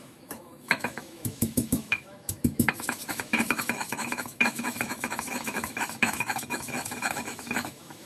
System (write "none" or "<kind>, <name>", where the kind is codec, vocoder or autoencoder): autoencoder, DAC-VAE